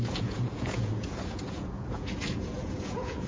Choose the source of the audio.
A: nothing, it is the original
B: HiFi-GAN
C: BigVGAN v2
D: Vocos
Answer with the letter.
D